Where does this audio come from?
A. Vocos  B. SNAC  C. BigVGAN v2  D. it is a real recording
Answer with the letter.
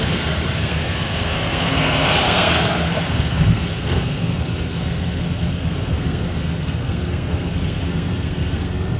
B